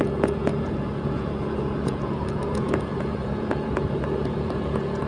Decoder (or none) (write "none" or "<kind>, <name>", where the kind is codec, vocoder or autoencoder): vocoder, Vocos